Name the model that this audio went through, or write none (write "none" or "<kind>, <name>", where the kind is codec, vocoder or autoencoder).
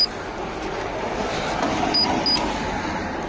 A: none